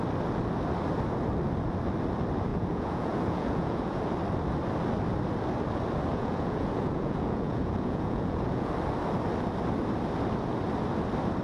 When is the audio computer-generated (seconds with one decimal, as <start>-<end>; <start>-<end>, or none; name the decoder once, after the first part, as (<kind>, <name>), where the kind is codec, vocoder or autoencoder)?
2.5-4.0 (vocoder, Vocos); 6.1-8.7